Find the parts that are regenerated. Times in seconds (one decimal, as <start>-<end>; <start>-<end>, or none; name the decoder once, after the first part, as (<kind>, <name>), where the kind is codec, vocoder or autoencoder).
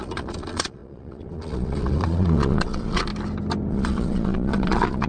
0.0-3.1 (vocoder, Vocos); 3.7-5.1